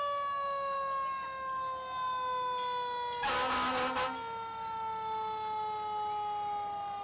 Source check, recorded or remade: recorded